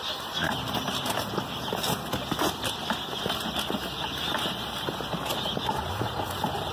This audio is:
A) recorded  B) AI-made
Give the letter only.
A